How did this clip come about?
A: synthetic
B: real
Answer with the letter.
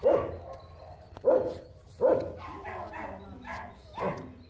B